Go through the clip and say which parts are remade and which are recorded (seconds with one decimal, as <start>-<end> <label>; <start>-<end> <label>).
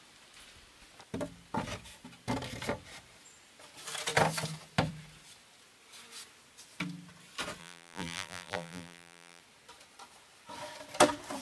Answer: 0.0-7.6 recorded; 7.6-9.4 remade; 9.4-11.4 recorded